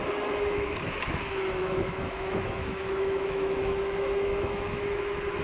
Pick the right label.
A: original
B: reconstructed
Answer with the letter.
B